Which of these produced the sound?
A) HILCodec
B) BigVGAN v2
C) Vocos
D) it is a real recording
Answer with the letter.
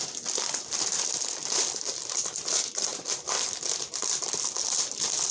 B